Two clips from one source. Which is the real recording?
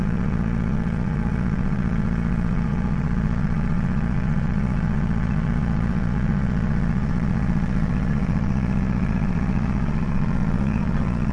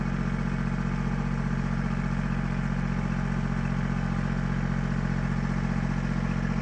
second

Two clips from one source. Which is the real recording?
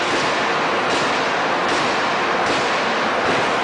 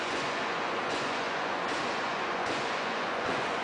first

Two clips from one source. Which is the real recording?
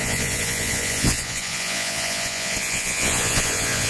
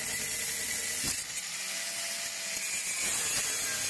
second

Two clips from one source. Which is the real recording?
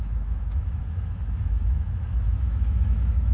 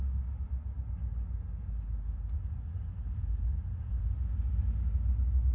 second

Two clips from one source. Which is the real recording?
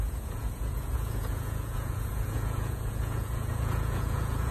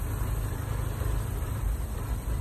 second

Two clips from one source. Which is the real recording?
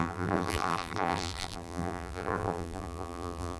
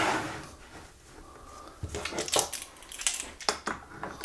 second